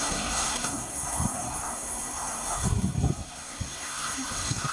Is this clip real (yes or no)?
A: no